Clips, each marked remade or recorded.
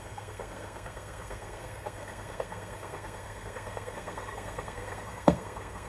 remade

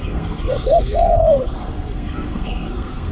remade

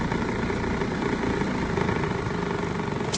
recorded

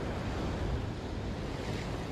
recorded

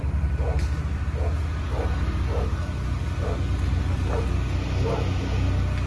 recorded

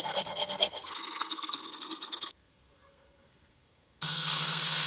remade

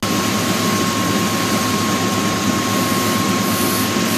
recorded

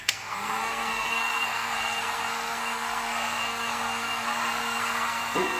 remade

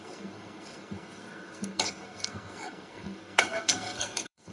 remade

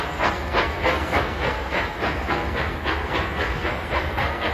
remade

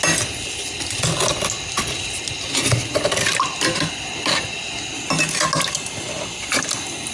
recorded